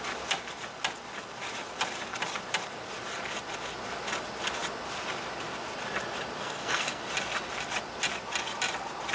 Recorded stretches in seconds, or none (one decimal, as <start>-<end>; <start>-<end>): 0.0-6.4; 7.0-9.1